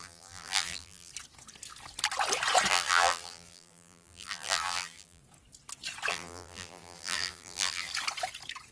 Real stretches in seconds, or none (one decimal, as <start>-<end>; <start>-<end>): 1.1-2.7; 5.2-6.1; 7.9-8.7